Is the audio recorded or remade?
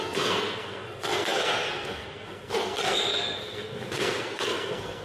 remade